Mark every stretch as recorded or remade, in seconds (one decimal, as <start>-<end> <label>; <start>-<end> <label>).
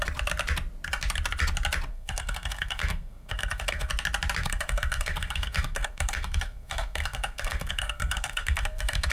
0.0-1.9 recorded; 1.9-3.9 remade; 3.9-4.4 recorded; 4.4-9.1 remade